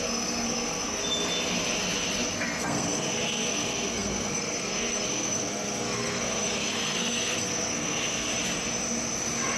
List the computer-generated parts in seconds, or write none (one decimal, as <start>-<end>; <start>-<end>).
0.0-1.0; 2.3-8.3